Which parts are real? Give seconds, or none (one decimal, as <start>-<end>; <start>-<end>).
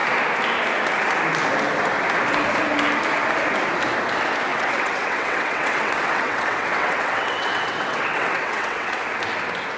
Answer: 0.0-4.5; 9.0-9.8